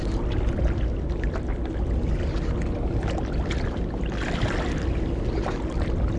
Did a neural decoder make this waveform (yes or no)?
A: no